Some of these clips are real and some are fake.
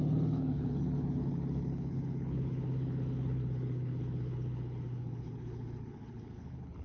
fake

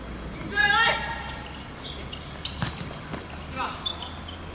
real